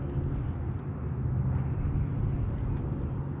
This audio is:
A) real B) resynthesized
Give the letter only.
A